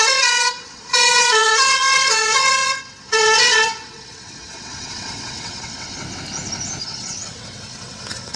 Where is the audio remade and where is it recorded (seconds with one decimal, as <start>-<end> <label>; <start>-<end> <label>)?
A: 0.0-6.0 remade; 6.0-6.8 recorded; 6.8-8.4 remade